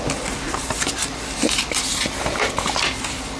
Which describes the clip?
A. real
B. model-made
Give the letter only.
A